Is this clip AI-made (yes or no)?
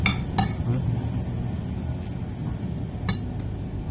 no